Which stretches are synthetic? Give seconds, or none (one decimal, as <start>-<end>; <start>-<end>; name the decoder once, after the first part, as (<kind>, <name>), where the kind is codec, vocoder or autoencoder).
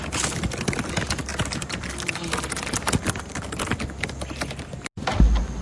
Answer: none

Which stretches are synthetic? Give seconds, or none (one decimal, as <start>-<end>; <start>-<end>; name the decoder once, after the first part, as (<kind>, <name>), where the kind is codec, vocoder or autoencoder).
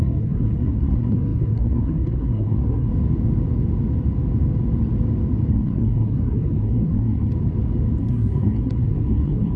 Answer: 0.0-2.9 (codec, SNAC); 5.5-7.3; 8.0-9.6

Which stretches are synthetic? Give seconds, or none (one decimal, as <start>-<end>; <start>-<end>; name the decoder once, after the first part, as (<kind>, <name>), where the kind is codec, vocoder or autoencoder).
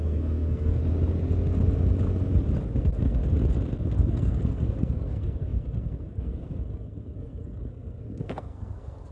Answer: 0.0-0.8 (codec, SNAC); 2.8-3.2; 3.9-9.1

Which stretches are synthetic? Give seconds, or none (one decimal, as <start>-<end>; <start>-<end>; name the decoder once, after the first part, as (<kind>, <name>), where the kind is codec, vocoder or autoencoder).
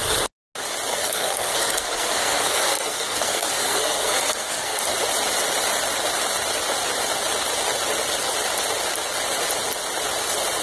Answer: 0.9-4.8 (codec, SNAC)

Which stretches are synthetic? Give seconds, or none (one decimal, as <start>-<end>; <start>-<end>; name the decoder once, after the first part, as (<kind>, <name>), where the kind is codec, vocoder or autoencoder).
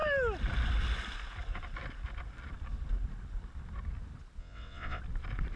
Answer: 4.4-5.0 (vocoder, WaveNeXt)